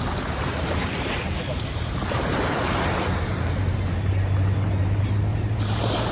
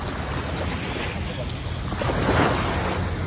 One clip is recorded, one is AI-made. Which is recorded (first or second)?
second